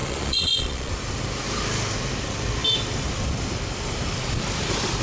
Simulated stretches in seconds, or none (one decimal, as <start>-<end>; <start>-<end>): 0.0-0.9